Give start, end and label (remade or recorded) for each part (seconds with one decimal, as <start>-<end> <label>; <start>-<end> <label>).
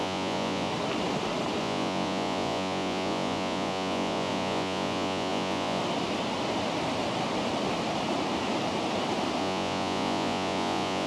0.0-0.7 remade; 0.7-1.6 recorded; 1.6-5.8 remade; 5.8-9.4 recorded; 9.4-11.1 remade